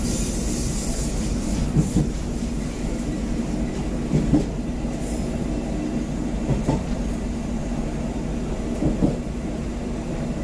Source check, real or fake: real